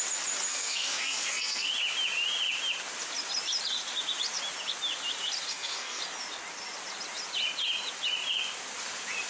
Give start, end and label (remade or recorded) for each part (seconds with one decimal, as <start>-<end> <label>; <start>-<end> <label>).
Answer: 0.0-0.5 recorded; 0.5-1.7 remade; 1.7-5.5 recorded; 5.5-6.0 remade; 6.0-9.3 recorded